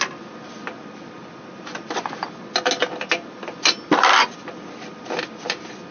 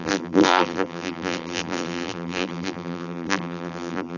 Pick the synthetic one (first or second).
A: second